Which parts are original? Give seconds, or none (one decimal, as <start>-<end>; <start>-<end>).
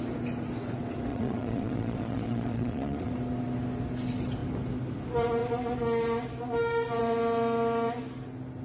0.0-1.1; 3.1-8.6